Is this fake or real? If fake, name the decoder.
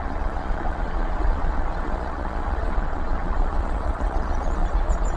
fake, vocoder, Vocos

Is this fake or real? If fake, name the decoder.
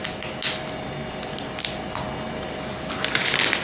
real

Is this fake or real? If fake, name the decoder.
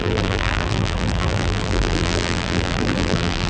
fake, vocoder, BigVGAN v2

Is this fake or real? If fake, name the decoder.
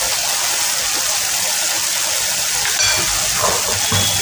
real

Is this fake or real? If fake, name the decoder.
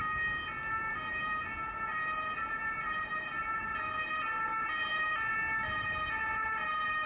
real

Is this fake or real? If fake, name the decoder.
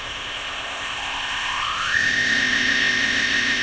fake, codec, ZipCodec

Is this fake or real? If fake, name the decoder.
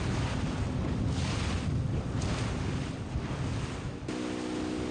real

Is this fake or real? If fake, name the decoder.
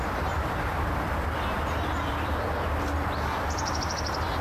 real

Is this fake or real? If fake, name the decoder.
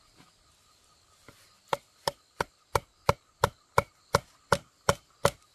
real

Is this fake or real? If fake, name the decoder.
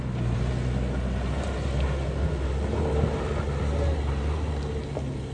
real